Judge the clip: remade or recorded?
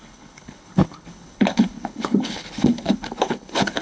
remade